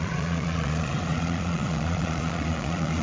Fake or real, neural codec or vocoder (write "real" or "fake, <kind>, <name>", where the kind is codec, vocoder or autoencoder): fake, vocoder, Vocos